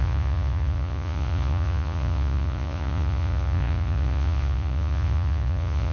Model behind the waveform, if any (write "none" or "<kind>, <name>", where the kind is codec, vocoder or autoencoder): vocoder, Vocos